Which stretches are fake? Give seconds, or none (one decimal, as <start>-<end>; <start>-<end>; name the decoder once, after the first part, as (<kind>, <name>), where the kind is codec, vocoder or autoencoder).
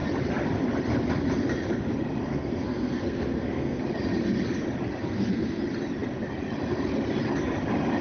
2.3-3.8 (codec, SNAC); 5.0-5.6